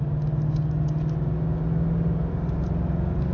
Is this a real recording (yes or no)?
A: yes